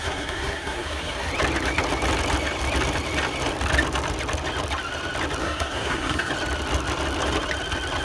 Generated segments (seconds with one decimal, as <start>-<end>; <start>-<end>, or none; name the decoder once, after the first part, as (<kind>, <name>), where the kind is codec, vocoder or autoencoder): 0.0-1.3 (codec, SNAC); 5.4-6.3